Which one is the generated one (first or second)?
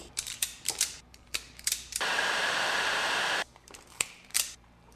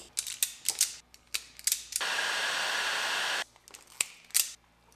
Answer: first